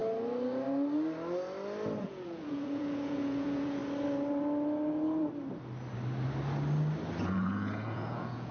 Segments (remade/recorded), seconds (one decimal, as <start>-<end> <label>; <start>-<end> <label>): 0.0-2.0 recorded; 2.0-3.8 remade; 3.8-7.2 recorded; 7.2-8.5 remade

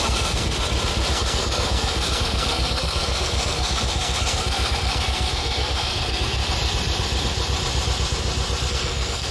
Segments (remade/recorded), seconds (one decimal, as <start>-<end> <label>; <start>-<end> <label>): 0.0-0.6 remade; 0.6-1.1 recorded; 1.1-6.4 remade; 6.4-8.7 recorded; 8.7-9.3 remade

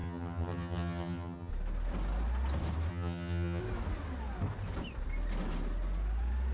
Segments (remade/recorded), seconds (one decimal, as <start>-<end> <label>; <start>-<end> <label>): 0.0-1.5 remade; 1.5-2.9 recorded; 2.9-3.6 remade; 3.6-6.5 recorded

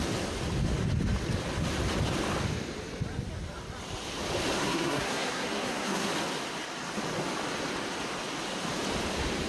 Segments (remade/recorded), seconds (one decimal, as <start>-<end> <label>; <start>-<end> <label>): 0.0-4.6 recorded; 4.6-6.1 remade; 6.1-9.5 recorded

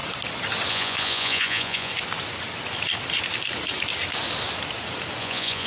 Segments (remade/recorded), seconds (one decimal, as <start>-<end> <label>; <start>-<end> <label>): 0.0-0.7 recorded; 0.7-1.9 remade; 1.9-5.2 recorded; 5.2-5.7 remade